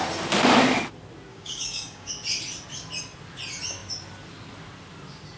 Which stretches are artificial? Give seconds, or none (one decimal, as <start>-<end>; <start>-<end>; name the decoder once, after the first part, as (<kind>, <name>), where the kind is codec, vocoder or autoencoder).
1.3-2.1 (codec, DAC)